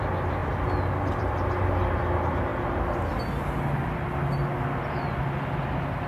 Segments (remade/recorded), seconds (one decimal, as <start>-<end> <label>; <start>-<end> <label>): 0.0-6.1 recorded